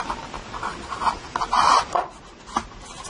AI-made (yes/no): no